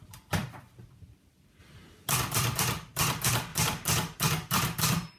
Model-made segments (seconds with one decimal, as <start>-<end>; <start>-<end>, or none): 0.0-1.6; 2.1-3.5; 4.3-5.2

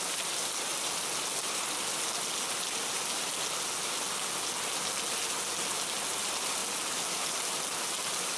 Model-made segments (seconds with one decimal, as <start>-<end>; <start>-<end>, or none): none

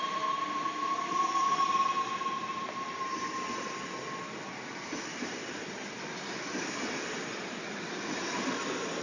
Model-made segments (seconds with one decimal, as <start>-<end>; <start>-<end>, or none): 0.0-3.1; 4.5-9.0

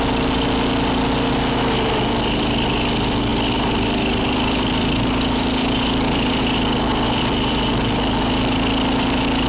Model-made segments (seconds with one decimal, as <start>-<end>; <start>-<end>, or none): 3.3-6.4; 6.9-7.7

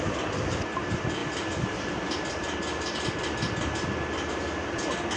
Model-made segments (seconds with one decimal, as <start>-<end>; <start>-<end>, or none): none

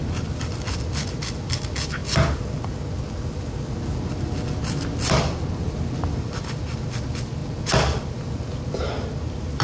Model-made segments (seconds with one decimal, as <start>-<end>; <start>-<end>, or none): none